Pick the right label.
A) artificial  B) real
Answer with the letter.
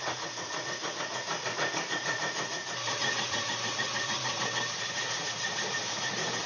A